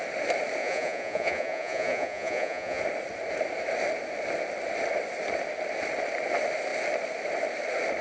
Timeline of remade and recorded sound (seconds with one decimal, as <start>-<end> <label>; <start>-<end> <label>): 0.0-0.6 recorded; 0.6-2.8 remade; 2.8-8.0 recorded